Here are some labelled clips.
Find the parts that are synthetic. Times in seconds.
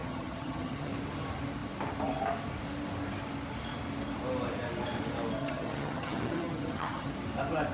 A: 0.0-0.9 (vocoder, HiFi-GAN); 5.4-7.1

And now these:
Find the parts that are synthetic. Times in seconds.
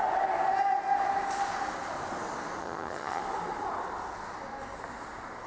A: 2.6-3.2 (vocoder, HiFi-GAN)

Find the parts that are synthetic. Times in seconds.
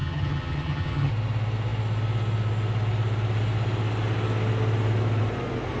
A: 0.0-1.1 (vocoder, HiFi-GAN)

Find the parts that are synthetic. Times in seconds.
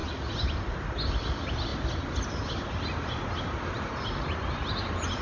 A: none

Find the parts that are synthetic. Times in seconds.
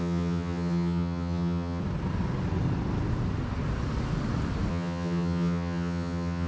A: 0.0-1.8 (vocoder, HiFi-GAN); 4.7-6.5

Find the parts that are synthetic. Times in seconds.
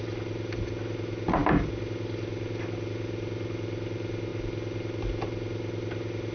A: none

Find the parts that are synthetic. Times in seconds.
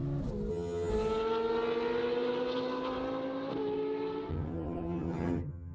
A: 0.5-0.9 (vocoder, HiFi-GAN); 4.3-5.7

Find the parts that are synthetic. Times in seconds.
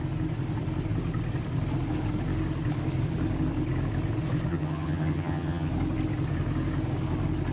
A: 4.5-5.7 (vocoder, HiFi-GAN)